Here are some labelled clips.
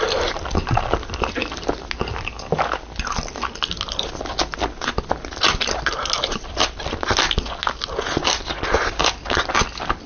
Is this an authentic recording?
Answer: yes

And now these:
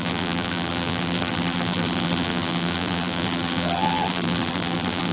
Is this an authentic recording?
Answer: no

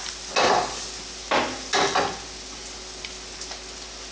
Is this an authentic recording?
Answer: yes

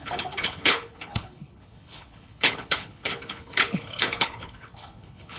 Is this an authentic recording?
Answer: no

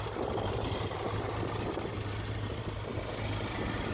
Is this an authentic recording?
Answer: yes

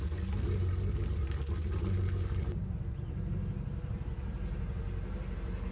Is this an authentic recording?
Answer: yes